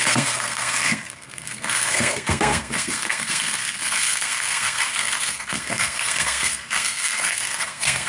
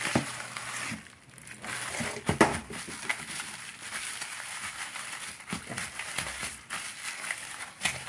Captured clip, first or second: second